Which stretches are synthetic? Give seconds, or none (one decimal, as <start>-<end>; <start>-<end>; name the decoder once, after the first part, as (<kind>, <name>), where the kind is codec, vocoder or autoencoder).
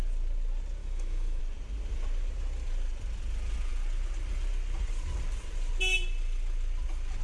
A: 0.8-1.4 (autoencoder, DAC-VAE)